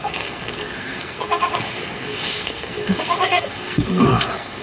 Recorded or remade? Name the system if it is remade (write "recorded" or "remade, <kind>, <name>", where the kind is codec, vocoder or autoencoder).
remade, codec, SNAC